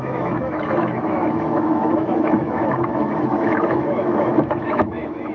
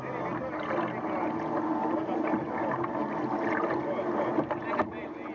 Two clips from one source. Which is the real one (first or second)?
second